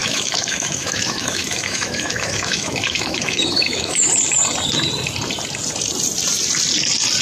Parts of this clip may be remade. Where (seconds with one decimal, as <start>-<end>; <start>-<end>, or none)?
0.0-4.1